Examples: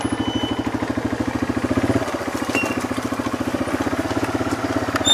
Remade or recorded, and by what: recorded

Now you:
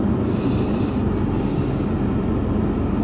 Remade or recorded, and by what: recorded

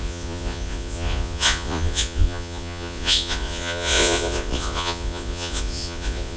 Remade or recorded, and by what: remade, vocoder, Vocos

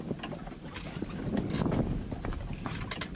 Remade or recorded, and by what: recorded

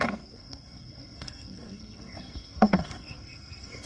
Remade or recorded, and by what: remade, codec, SNAC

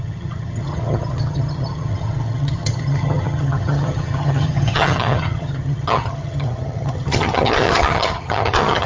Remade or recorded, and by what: remade, vocoder, HiFi-GAN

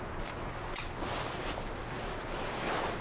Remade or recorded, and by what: recorded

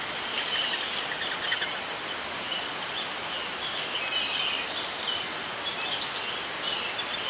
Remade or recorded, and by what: recorded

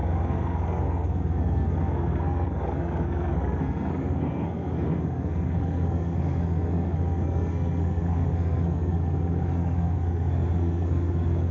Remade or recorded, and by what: remade, codec, SNAC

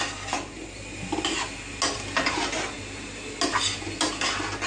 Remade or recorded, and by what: recorded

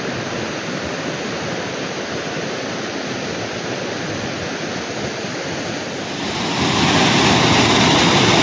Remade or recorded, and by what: recorded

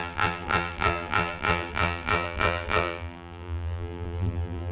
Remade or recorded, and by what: remade, vocoder, BigVGAN v2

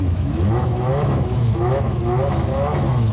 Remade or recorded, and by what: remade, autoencoder, DAC-VAE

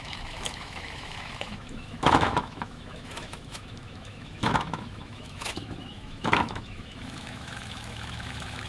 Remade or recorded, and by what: remade, autoencoder, DAC-VAE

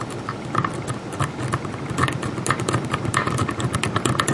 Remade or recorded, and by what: recorded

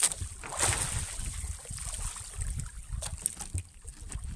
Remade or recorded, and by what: recorded